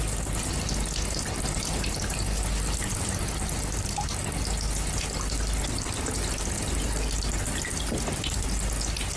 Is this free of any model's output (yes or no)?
yes